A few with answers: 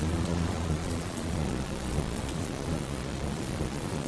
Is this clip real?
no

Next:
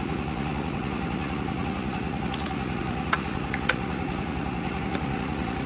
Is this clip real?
no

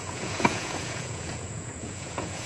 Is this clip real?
no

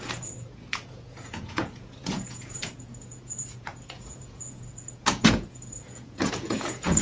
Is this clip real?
no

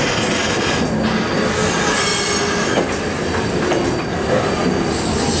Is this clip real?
yes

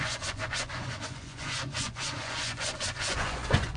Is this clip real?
no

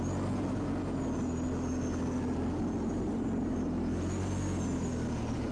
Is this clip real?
yes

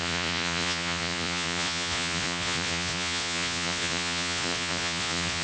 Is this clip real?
no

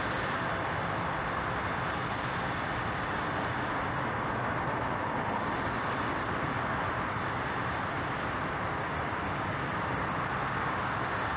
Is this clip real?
yes